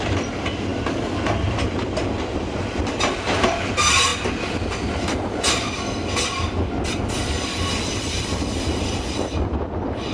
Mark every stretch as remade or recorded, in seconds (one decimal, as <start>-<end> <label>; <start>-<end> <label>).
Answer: 0.0-10.1 recorded